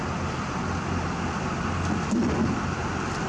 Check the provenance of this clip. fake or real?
real